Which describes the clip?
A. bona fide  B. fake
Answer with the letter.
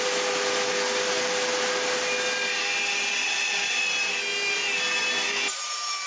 A